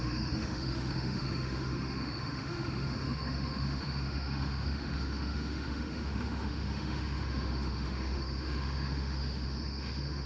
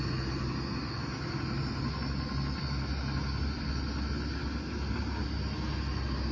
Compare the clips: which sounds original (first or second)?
second